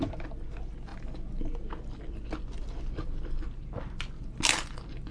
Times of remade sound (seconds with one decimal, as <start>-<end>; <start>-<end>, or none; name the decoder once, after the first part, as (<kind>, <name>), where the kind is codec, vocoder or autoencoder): none